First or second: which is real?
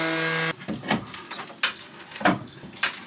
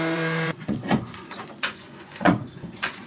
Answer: first